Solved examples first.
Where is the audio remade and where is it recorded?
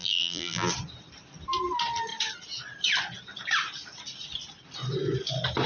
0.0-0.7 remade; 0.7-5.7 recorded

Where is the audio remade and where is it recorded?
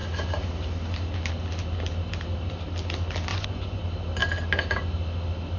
0.0-3.3 recorded; 3.3-3.8 remade; 3.8-5.6 recorded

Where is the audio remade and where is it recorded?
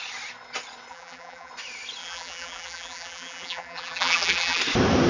0.0-0.9 recorded; 0.9-1.5 remade; 1.5-2.0 recorded; 2.0-4.6 remade; 4.6-5.1 recorded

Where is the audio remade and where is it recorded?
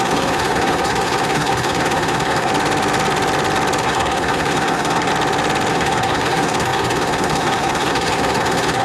0.0-2.5 remade; 2.5-3.8 recorded; 3.8-5.1 remade; 5.1-5.7 recorded; 5.7-8.8 remade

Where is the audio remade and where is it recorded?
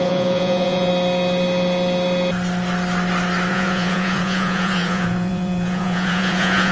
0.0-0.9 remade; 0.9-3.5 recorded; 3.5-6.7 remade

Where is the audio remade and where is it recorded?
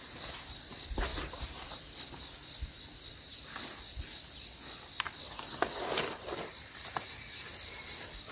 0.0-1.1 recorded; 1.1-2.2 remade; 2.2-8.3 recorded